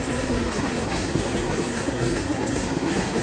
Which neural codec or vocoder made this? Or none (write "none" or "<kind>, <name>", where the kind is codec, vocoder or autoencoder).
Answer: codec, SNAC